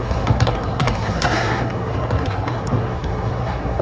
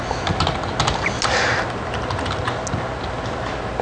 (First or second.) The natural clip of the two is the second